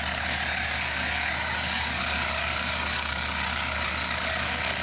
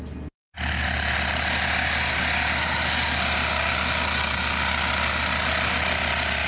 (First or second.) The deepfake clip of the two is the first